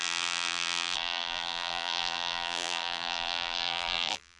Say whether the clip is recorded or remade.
remade